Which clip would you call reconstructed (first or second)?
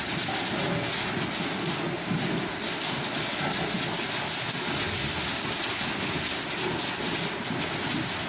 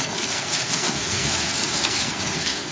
second